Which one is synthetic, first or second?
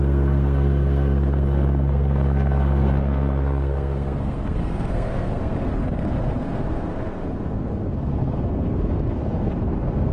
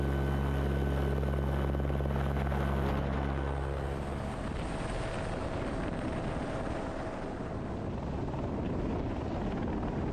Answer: first